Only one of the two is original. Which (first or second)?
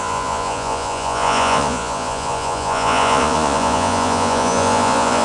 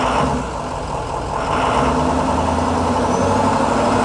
second